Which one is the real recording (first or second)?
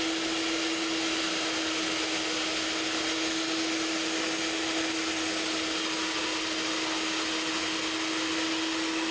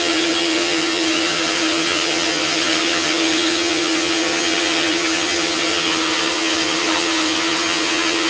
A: first